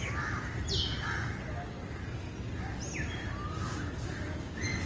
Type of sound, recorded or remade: recorded